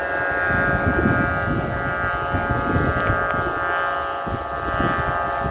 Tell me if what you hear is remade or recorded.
recorded